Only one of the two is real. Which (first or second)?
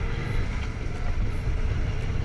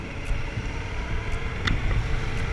second